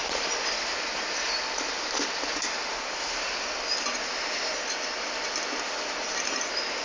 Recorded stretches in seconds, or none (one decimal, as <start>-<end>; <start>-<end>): 0.0-6.8